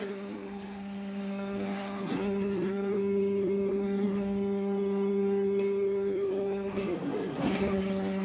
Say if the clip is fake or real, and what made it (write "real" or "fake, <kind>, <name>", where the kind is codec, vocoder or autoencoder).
fake, codec, SNAC